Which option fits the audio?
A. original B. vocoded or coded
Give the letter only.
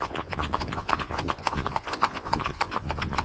B